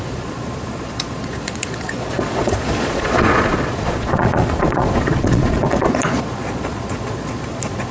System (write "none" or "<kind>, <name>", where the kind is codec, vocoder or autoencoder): vocoder, Vocos